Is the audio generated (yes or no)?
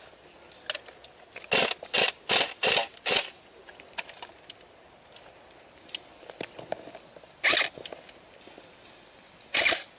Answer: no